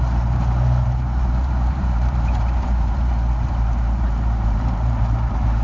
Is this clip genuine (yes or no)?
no